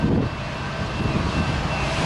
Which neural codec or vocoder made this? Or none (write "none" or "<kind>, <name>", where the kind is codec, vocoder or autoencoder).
none